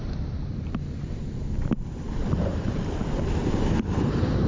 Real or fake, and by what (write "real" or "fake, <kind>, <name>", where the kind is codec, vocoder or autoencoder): fake, vocoder, BigVGAN v2